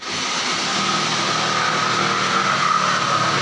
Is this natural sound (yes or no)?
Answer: yes